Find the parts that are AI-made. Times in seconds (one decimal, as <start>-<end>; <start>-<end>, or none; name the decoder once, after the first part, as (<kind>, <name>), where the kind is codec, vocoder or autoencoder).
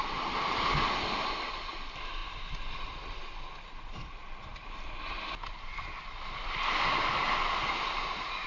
none